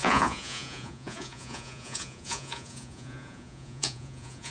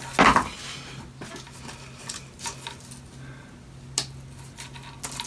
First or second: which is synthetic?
first